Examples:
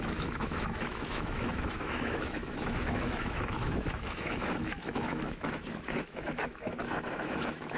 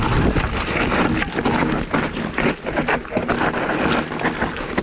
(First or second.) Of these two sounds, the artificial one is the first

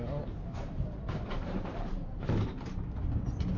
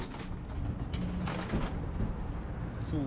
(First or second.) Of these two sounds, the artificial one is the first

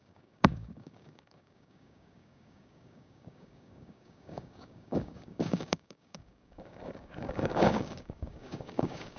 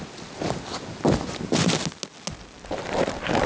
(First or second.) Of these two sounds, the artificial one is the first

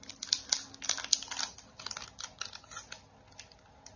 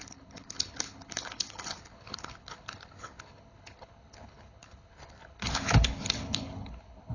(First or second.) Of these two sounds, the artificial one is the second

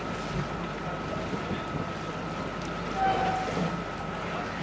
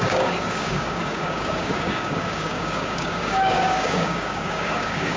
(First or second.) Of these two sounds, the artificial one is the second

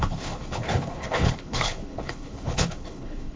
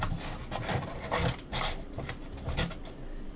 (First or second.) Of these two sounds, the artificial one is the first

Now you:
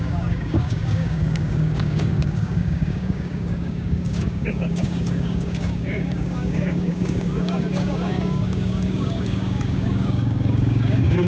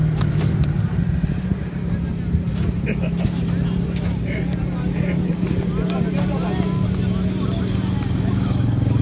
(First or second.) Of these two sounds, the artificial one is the first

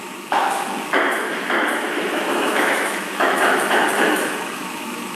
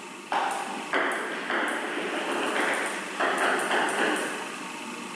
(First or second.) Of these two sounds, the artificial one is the first